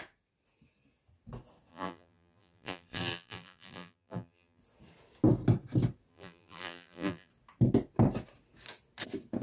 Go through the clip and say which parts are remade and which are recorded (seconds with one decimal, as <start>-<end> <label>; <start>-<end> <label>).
0.0-1.7 recorded; 1.7-4.6 remade; 4.6-6.1 recorded; 6.1-7.3 remade; 7.3-9.4 recorded